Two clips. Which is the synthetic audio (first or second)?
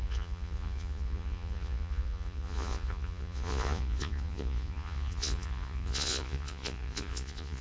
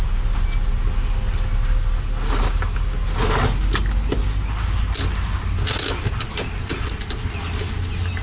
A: first